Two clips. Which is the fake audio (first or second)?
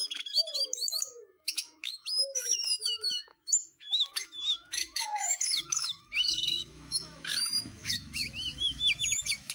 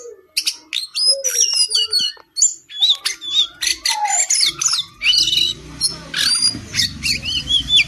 first